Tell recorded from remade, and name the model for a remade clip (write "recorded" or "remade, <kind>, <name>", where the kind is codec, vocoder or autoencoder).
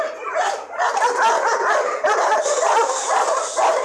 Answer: recorded